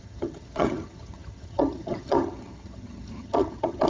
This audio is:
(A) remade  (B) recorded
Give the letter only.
A